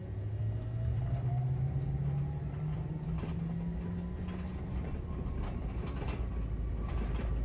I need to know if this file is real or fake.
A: real